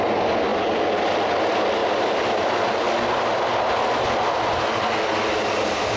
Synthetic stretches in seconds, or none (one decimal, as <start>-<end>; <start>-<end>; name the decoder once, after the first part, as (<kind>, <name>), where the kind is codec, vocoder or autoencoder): none